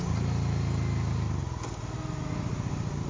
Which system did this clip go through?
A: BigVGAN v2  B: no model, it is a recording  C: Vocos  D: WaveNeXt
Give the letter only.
B